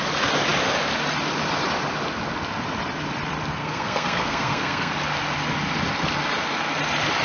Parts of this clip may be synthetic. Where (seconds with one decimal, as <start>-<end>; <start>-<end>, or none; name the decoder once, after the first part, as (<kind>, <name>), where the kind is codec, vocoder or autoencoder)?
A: 3.6-4.9 (codec, SNAC)